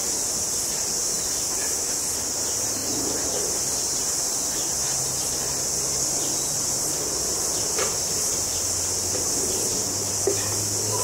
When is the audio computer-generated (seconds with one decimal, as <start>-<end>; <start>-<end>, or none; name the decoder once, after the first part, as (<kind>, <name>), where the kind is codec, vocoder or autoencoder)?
2.8-7.2 (vocoder, BigVGAN v2); 9.7-10.5